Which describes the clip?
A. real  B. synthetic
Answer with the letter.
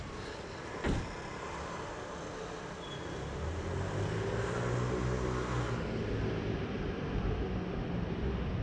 A